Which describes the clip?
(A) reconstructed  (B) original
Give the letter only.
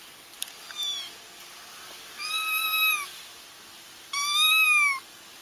B